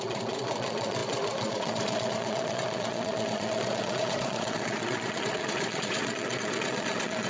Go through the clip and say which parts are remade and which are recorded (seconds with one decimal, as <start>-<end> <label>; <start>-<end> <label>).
0.0-7.3 remade